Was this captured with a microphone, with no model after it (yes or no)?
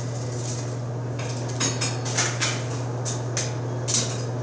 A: yes